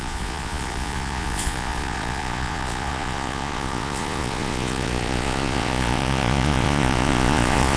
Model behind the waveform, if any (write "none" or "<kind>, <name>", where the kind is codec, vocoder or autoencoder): vocoder, Vocos